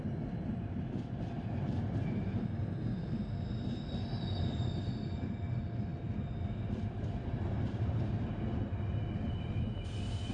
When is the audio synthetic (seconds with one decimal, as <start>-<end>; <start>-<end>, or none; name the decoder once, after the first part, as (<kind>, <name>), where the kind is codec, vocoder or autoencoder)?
none

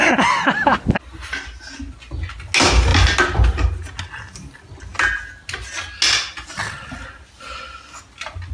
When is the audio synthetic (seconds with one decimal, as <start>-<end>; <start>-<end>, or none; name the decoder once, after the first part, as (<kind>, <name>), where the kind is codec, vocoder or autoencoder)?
none